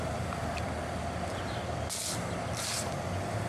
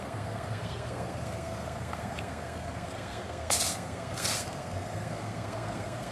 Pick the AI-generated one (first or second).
second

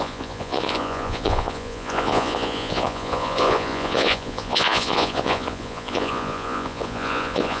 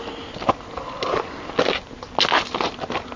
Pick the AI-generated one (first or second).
first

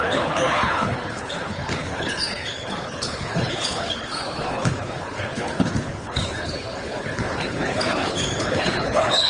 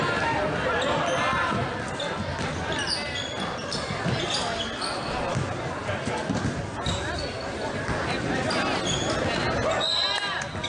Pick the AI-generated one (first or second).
first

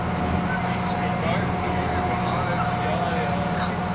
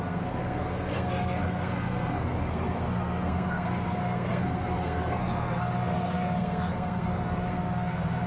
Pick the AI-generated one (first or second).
second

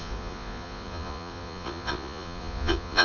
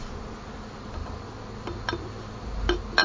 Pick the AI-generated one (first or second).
first